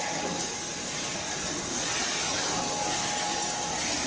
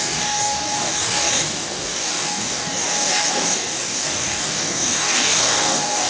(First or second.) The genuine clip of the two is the first